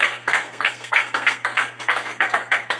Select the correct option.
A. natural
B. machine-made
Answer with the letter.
B